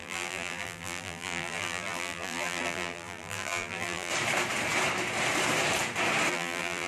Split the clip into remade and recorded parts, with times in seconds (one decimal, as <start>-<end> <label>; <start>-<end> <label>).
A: 0.0-4.1 remade; 4.1-6.3 recorded; 6.3-6.9 remade